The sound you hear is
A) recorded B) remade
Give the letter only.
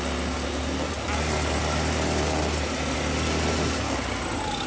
A